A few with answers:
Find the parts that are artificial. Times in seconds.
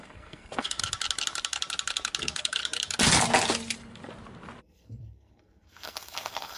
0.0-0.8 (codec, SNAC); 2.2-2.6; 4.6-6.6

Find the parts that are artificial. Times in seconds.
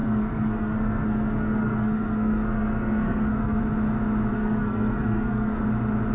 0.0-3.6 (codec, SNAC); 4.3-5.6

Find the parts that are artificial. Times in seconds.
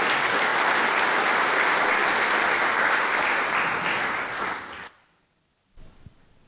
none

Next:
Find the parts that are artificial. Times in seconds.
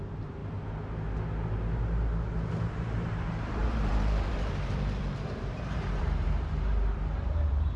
0.0-0.4 (vocoder, BigVGAN v2); 2.5-7.8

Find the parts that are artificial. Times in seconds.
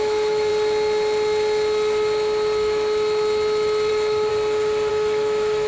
0.0-0.5 (autoencoder, DAC-VAE); 3.9-4.3; 4.9-5.7